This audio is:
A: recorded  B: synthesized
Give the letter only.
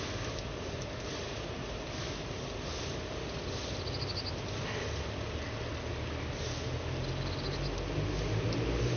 A